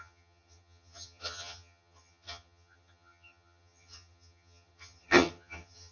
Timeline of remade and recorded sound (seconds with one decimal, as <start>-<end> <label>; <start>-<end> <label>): 0.0-5.9 remade